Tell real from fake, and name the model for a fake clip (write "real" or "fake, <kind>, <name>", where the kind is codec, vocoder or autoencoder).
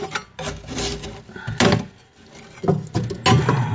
real